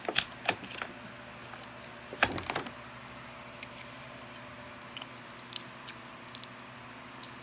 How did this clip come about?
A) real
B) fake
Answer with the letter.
A